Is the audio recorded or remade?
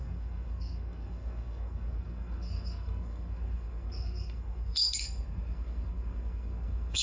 remade